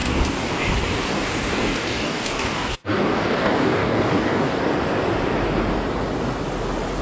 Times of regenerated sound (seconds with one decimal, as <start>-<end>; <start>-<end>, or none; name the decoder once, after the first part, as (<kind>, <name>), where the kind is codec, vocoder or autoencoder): 0.0-0.6 (codec, DAC); 1.1-4.6